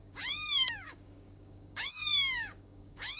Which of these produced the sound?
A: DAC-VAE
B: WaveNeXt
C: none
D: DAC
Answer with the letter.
D